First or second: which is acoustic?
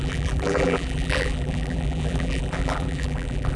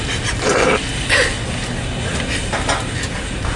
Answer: second